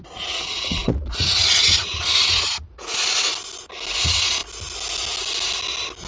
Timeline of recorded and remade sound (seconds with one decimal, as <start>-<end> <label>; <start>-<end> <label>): 0.0-3.3 remade; 3.3-3.9 recorded; 3.9-4.4 remade; 4.4-6.1 recorded